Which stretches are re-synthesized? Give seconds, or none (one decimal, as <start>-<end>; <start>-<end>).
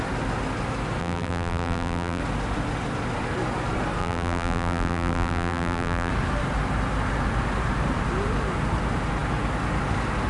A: 1.0-2.2; 4.0-6.1